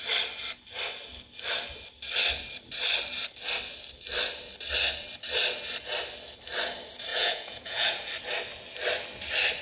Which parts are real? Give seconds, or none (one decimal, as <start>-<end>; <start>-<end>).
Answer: 0.0-7.1; 8.1-9.6